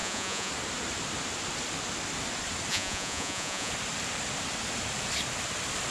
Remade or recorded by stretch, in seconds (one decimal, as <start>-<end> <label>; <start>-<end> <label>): 0.0-0.5 remade; 0.5-2.7 recorded; 2.7-3.7 remade; 3.7-5.9 recorded